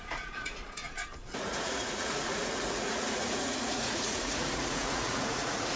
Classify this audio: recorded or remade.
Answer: remade